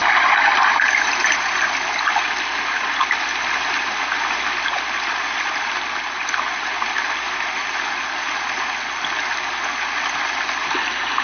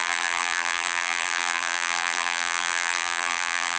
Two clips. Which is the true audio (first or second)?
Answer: first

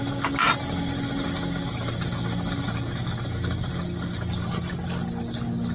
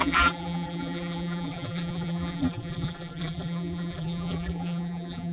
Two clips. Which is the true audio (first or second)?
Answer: first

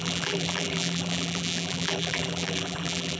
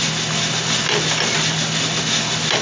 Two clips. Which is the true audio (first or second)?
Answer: second